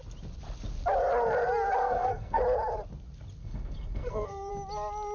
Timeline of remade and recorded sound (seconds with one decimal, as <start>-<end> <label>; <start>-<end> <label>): 0.0-1.8 recorded; 1.8-2.4 remade; 2.4-3.4 recorded; 3.4-4.5 remade; 4.5-5.1 recorded